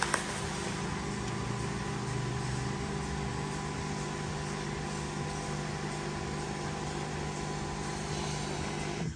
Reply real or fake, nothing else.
real